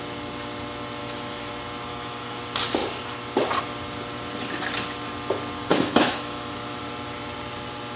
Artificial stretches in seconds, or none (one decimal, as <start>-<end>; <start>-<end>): 1.0-1.5; 1.9-2.4; 5.7-6.8